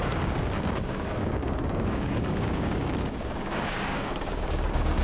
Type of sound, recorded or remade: remade